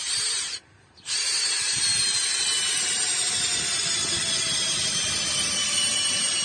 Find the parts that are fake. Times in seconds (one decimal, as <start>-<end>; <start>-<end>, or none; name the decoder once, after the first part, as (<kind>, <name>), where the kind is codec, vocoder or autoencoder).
0.0-1.9 (vocoder, BigVGAN v2); 5.7-6.4